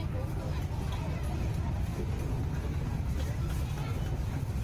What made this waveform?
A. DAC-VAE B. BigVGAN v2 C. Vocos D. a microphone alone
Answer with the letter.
D